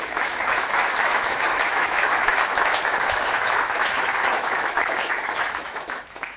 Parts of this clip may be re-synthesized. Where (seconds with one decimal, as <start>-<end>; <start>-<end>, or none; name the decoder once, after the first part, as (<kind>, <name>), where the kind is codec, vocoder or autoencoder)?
0.0-6.4 (autoencoder, DAC-VAE)